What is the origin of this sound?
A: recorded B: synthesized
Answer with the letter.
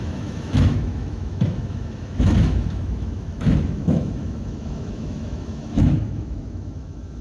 B